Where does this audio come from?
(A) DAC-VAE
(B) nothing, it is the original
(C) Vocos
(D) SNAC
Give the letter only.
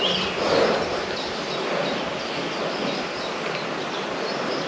B